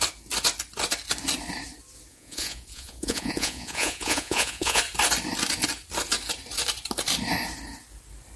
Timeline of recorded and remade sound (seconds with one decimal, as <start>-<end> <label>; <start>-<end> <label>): 0.0-2.1 recorded; 2.1-4.8 remade; 4.8-8.4 recorded